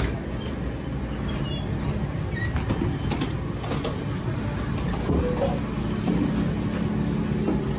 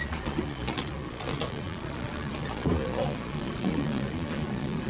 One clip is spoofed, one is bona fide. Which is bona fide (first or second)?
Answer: first